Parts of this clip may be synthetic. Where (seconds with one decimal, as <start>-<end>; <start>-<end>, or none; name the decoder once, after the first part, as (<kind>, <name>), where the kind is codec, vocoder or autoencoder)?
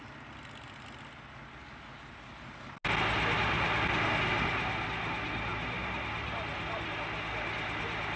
none